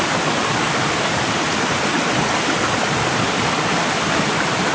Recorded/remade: recorded